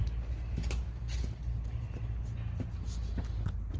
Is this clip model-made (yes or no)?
no